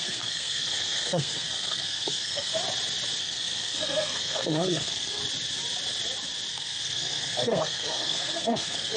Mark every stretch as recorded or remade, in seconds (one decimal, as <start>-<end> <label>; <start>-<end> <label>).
0.0-2.5 remade; 2.5-3.2 recorded; 3.2-5.2 remade; 5.2-6.5 recorded; 6.5-9.0 remade